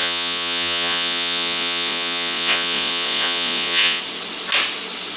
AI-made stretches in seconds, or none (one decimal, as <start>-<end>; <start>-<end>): 0.0-4.0

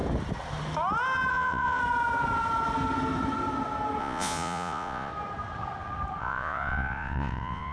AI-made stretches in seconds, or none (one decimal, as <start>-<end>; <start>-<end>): 1.3-1.8; 4.0-5.1; 6.2-7.7

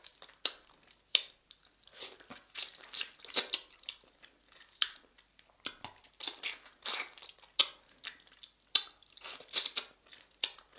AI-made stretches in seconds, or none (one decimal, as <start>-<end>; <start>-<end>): none

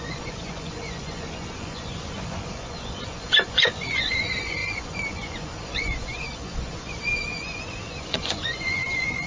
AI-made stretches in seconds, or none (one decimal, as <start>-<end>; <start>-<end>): 0.0-9.3